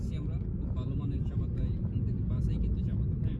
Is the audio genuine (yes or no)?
yes